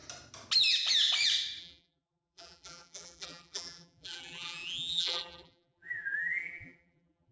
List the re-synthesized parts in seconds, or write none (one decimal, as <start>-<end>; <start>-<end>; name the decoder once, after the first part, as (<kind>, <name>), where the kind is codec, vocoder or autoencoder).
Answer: 1.6-7.3 (vocoder, BigVGAN v2)